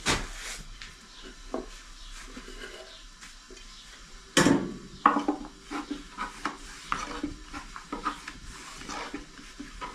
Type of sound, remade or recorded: recorded